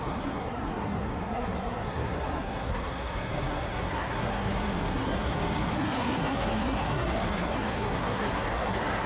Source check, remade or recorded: remade